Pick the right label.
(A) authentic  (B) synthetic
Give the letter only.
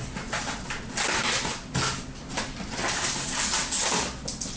A